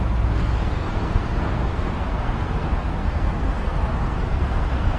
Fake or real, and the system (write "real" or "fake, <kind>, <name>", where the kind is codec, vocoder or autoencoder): fake, codec, SNAC